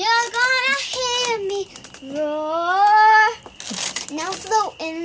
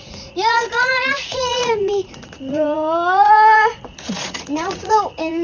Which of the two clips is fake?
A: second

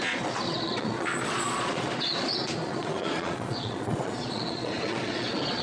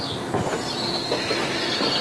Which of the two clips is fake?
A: first